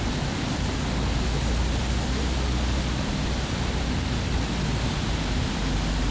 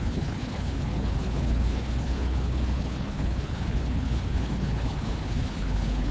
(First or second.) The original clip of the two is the first